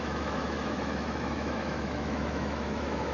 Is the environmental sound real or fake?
fake